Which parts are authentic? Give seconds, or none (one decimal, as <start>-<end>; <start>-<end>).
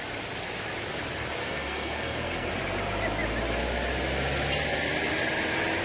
0.0-1.4; 2.5-5.8